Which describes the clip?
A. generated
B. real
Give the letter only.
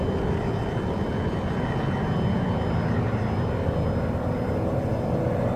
B